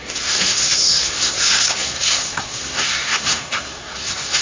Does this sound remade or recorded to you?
remade